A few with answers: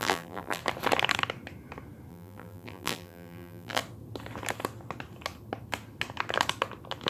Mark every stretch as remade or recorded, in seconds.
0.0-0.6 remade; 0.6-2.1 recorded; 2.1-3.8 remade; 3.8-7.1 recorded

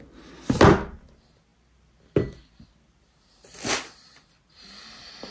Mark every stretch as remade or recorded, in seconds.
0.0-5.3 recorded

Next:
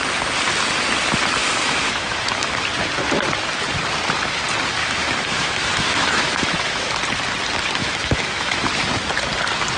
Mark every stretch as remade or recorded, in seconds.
0.0-1.4 recorded; 1.4-2.5 remade; 2.5-4.8 recorded; 4.8-6.9 remade; 6.9-7.8 recorded; 7.8-8.7 remade; 8.7-9.8 recorded

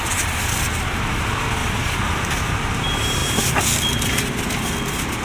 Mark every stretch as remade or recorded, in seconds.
0.0-5.2 recorded

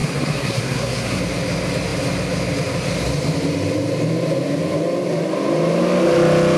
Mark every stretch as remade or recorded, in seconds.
0.0-1.2 remade; 1.2-6.6 recorded